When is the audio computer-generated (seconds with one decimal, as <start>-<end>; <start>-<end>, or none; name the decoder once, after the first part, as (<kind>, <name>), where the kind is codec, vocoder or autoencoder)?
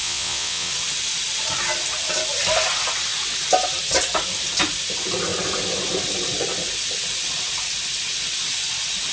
0.0-0.7 (vocoder, WaveNeXt)